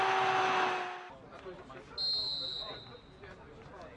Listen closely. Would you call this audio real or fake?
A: real